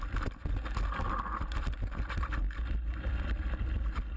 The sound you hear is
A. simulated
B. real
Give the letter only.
B